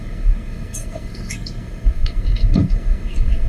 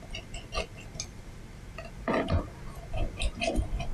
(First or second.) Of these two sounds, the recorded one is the second